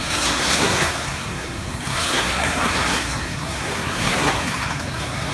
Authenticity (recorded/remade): remade